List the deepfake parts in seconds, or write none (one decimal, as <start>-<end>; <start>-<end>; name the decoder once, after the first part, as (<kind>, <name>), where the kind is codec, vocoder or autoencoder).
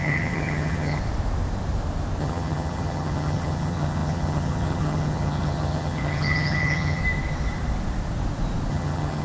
0.0-1.0 (vocoder, HiFi-GAN); 2.2-7.0; 8.7-9.2